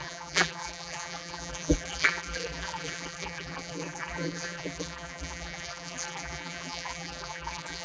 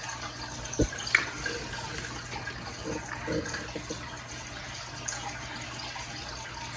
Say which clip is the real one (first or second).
second